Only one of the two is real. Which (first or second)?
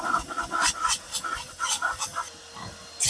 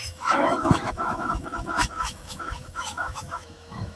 first